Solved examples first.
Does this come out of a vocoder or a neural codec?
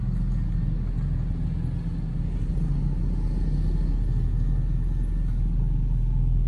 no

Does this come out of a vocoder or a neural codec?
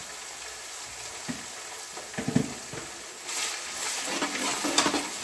no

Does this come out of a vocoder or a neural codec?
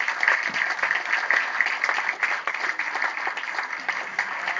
no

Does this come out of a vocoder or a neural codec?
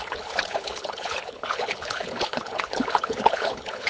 yes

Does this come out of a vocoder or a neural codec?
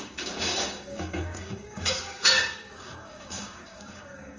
yes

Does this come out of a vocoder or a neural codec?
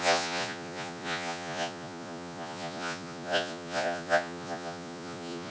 yes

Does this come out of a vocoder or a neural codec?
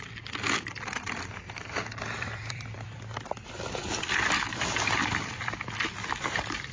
yes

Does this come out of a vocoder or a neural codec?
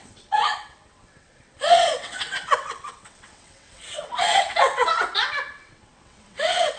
yes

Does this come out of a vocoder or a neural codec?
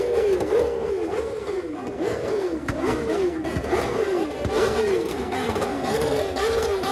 yes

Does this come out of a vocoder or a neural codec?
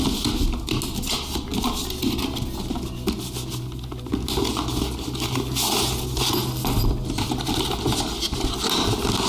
no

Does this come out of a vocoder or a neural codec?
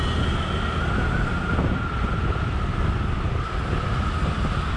no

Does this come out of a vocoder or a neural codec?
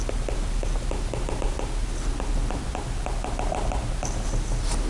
no